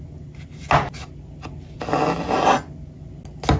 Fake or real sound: real